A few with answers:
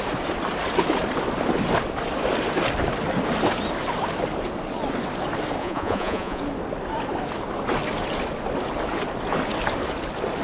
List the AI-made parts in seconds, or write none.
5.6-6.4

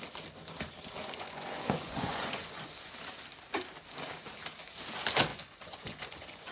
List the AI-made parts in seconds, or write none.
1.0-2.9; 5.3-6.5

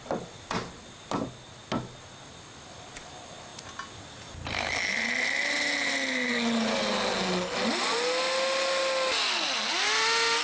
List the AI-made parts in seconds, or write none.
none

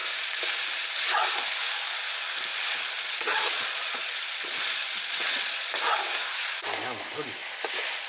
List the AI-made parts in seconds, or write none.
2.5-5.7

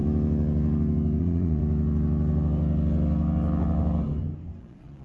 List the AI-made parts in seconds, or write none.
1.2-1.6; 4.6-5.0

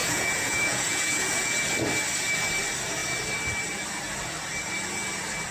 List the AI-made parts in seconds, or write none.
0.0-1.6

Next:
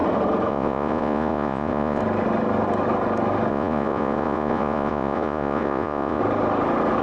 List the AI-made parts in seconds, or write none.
0.5-2.0; 3.5-6.2